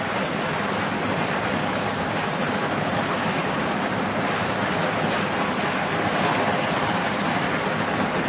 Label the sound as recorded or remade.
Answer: recorded